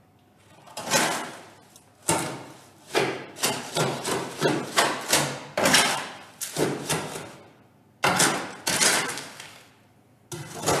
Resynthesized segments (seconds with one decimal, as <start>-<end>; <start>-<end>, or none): 9.1-9.7